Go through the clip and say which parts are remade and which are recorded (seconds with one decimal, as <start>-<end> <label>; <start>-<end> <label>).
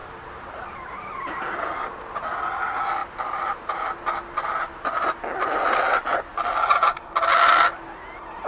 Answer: 0.0-1.6 remade; 1.6-3.0 recorded; 3.0-3.8 remade; 3.8-6.3 recorded; 6.3-7.2 remade; 7.2-8.5 recorded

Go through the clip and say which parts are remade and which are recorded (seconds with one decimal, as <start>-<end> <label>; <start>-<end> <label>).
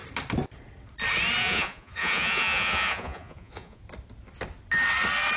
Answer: 0.0-1.4 recorded; 1.4-3.8 remade; 3.8-5.4 recorded